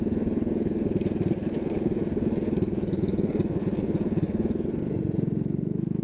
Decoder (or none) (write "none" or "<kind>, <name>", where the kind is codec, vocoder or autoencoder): none